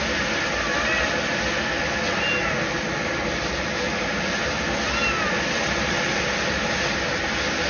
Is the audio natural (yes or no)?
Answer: yes